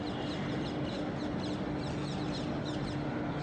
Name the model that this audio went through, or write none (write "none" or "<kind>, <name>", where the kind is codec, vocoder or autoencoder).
none